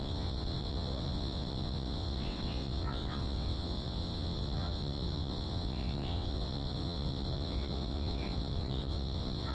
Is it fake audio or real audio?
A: fake